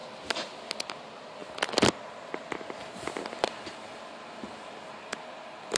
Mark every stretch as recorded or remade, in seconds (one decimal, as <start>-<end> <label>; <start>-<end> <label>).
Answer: 0.0-5.8 recorded